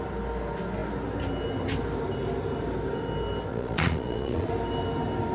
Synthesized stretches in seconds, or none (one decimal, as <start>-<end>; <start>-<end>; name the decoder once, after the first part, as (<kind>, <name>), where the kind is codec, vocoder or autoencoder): 3.5-4.5 (vocoder, Vocos)

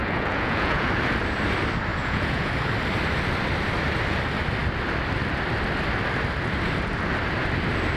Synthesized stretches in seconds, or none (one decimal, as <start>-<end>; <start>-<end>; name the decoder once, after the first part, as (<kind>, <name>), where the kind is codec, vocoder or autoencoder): 0.0-0.9 (vocoder, Vocos); 1.9-2.5

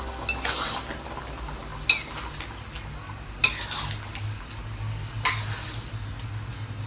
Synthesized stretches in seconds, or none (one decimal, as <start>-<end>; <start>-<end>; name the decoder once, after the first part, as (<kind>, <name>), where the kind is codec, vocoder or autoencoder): none

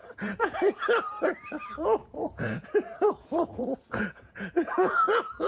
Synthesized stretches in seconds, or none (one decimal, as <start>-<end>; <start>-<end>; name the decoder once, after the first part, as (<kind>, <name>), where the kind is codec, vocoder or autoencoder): 0.0-0.8 (vocoder, Vocos); 2.0-5.5

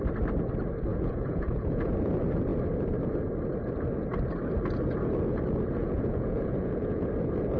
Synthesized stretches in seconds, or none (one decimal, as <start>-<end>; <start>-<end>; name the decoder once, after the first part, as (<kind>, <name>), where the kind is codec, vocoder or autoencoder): 0.9-1.8 (vocoder, Vocos); 5.8-7.1

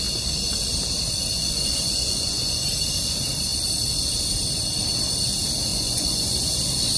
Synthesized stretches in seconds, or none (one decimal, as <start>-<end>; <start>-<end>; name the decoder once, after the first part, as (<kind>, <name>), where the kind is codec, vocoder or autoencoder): 1.3-2.7 (vocoder, Vocos); 5.7-6.4

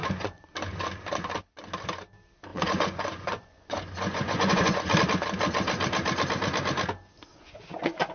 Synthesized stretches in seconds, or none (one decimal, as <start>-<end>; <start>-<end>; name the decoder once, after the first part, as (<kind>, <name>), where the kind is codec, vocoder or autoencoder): 0.0-0.5 (vocoder, Vocos); 2.5-4.9; 7.3-8.1

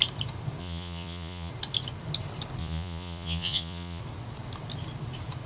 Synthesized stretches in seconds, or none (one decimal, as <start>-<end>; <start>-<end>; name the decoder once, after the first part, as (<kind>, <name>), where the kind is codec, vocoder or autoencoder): 0.6-1.5 (vocoder, Vocos); 2.6-4.0